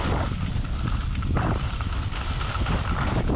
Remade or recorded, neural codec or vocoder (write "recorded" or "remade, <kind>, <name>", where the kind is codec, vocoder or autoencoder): recorded